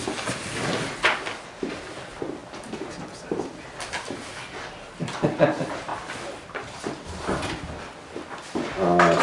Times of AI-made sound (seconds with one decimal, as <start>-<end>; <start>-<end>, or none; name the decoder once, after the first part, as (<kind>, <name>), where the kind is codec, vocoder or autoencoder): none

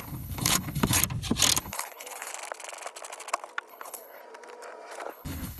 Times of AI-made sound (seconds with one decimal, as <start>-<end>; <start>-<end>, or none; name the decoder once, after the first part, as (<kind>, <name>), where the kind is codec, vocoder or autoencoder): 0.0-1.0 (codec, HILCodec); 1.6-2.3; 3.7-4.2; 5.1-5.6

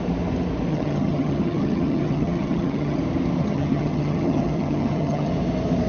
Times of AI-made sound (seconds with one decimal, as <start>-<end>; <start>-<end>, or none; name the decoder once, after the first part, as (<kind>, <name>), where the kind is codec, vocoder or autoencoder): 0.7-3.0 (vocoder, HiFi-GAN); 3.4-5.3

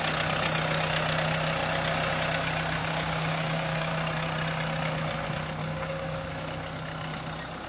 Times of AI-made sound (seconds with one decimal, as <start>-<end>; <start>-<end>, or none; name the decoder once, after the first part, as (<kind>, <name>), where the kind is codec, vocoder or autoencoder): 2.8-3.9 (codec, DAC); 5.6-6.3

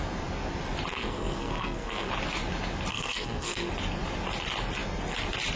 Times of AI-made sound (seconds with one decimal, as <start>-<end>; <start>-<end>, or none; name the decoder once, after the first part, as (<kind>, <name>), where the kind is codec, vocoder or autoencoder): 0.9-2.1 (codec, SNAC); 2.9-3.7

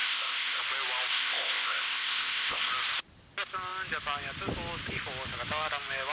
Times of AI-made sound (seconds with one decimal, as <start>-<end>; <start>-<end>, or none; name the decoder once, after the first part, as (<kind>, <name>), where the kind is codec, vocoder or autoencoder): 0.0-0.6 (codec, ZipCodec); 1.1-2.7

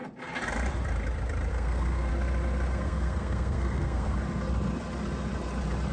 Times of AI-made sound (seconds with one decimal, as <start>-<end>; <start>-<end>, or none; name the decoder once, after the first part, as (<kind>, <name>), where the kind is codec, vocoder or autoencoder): 1.5-2.1 (codec, SNAC); 2.7-4.2

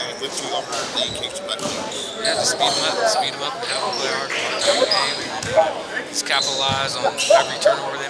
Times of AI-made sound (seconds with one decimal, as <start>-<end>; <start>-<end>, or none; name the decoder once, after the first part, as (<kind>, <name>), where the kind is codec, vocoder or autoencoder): none